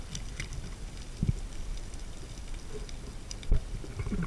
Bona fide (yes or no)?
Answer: yes